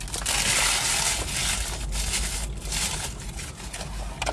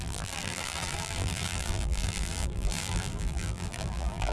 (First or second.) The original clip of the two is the first